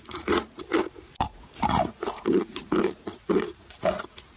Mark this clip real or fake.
fake